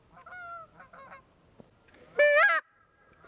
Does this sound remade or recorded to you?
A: recorded